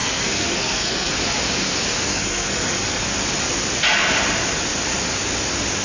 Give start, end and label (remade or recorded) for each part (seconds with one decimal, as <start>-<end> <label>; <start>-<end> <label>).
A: 0.0-1.1 remade; 1.1-2.1 recorded; 2.1-3.0 remade; 3.0-5.8 recorded